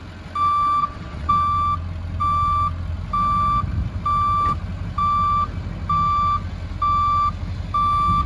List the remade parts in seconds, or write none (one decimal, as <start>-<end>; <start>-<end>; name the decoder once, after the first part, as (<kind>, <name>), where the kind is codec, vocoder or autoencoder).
0.8-1.3 (vocoder, WaveNeXt)